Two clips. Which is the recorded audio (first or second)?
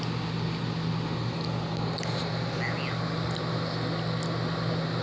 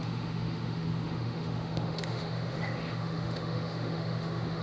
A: first